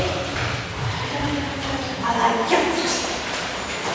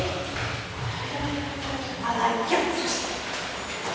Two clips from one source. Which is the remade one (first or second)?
first